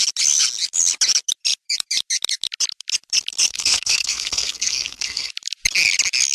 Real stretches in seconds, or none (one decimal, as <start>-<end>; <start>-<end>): 0.0-3.5; 5.3-6.3